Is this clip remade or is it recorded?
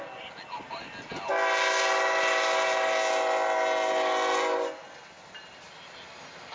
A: recorded